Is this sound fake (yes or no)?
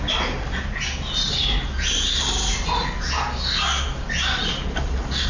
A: no